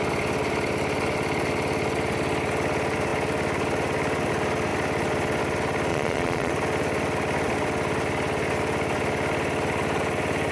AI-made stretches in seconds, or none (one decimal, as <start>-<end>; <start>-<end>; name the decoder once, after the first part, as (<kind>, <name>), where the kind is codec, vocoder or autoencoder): 5.9-6.5 (vocoder, Vocos)